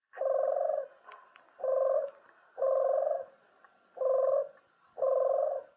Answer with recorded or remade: recorded